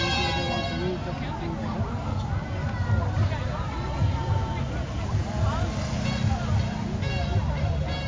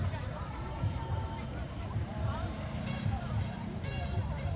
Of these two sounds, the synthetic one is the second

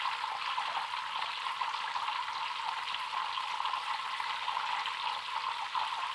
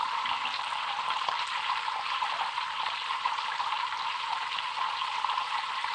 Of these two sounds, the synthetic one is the second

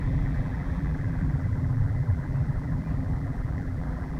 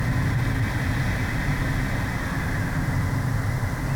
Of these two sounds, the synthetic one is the first